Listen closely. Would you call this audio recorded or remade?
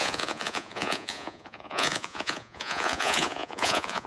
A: remade